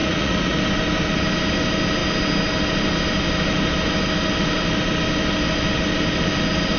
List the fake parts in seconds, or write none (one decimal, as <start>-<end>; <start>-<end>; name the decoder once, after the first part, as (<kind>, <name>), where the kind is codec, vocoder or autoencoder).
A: 0.0-0.6 (vocoder, Vocos)